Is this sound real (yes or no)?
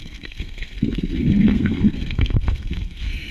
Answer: no